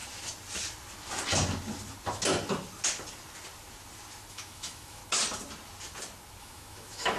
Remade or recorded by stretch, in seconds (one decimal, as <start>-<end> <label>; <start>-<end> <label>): 0.0-4.3 recorded; 4.3-5.0 remade; 5.0-6.4 recorded; 6.4-7.2 remade